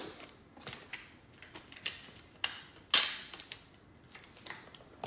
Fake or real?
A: real